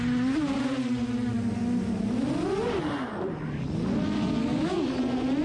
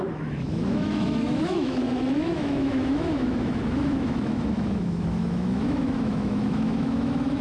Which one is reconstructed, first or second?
second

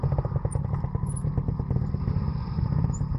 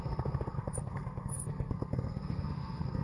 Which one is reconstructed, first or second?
second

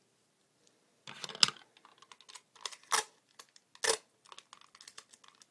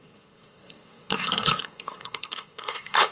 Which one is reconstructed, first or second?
second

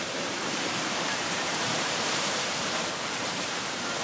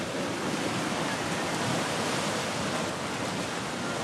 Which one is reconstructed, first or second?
first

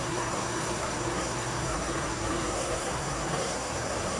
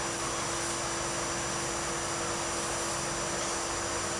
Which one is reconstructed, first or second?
first